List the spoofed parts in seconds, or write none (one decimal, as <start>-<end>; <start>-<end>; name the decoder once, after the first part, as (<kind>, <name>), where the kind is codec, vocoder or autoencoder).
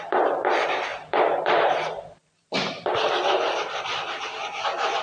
0.0-5.0 (vocoder, BigVGAN v2)